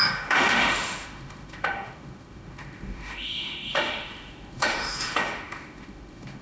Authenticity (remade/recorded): remade